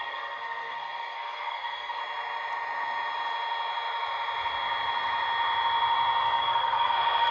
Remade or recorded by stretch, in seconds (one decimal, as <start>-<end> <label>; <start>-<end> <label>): 0.0-2.0 remade; 2.0-6.4 recorded; 6.4-7.3 remade